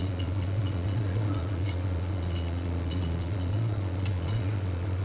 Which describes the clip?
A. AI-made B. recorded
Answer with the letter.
A